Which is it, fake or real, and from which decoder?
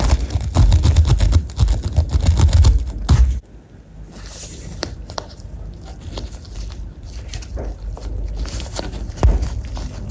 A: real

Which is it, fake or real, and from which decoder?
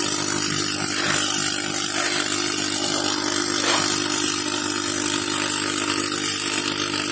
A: real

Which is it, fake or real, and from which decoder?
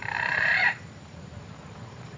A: fake, vocoder, BigVGAN v2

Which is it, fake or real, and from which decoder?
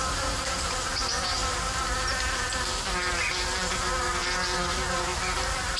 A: real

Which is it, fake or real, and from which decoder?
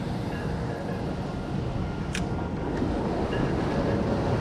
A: real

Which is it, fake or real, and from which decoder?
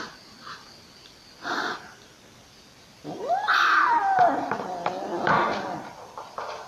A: real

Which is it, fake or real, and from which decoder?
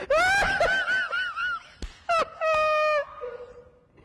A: real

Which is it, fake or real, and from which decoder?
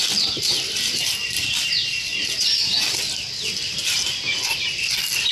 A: real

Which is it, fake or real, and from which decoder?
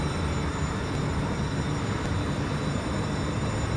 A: real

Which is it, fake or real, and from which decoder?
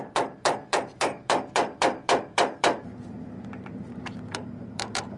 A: fake, vocoder, BigVGAN v2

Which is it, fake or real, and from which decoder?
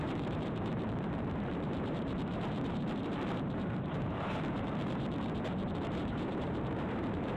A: fake, vocoder, BigVGAN v2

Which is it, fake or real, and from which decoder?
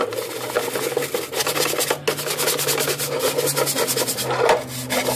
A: real